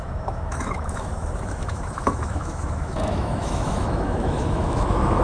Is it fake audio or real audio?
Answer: fake